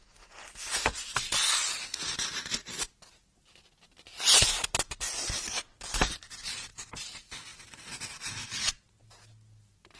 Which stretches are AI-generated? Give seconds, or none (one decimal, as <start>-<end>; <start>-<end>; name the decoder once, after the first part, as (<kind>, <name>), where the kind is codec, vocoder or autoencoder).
none